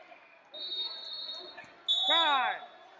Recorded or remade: recorded